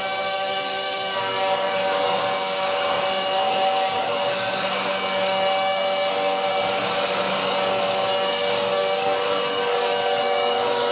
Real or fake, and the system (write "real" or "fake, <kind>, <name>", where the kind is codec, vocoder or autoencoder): fake, codec, DAC